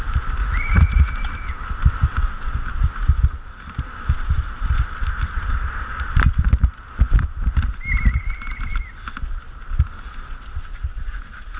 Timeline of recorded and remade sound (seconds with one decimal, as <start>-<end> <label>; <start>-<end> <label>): 0.0-0.4 recorded; 0.4-1.1 remade; 1.1-11.6 recorded